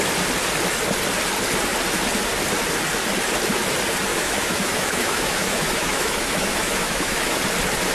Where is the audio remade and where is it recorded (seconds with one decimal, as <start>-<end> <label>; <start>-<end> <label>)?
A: 0.0-4.1 recorded; 4.1-7.4 remade; 7.4-7.9 recorded